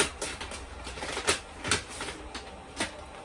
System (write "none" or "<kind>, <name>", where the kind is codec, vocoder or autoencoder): none